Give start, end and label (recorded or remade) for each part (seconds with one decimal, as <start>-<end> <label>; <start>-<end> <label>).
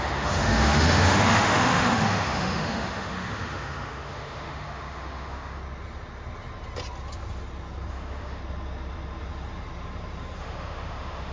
0.0-5.6 remade; 5.6-7.9 recorded; 7.9-8.4 remade; 8.4-10.4 recorded; 10.4-11.3 remade